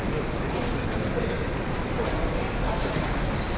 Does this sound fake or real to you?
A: real